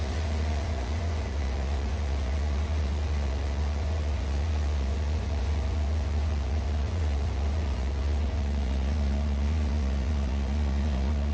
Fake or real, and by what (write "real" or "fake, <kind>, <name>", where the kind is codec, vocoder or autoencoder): fake, vocoder, Vocos